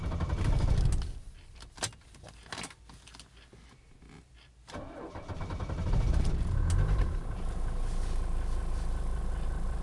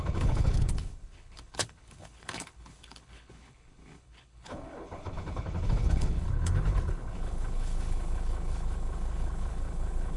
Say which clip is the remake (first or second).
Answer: second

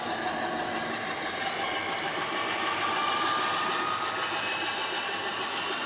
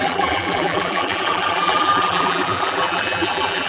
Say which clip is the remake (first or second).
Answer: second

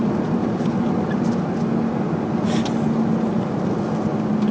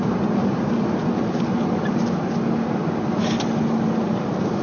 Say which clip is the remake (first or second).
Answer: second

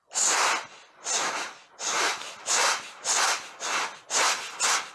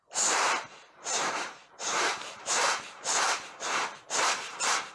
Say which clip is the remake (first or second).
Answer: second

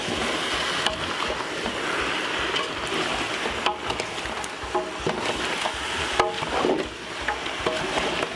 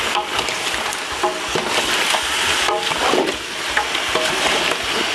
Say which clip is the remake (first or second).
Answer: second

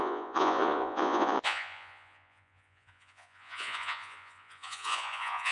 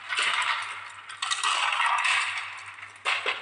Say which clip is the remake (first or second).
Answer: first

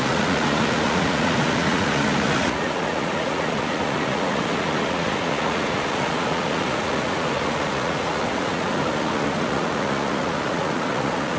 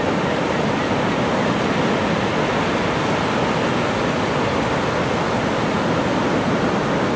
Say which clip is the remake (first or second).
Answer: first